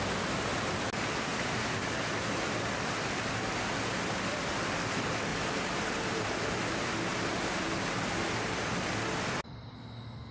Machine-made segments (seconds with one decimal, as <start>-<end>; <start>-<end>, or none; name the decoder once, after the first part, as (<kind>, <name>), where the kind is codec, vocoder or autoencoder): 5.3-6.3 (vocoder, BigVGAN v2); 7.1-8.2